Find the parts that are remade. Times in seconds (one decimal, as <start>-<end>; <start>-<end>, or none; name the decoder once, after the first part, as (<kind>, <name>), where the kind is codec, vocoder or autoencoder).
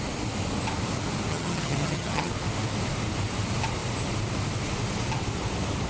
1.3-2.3 (vocoder, HiFi-GAN)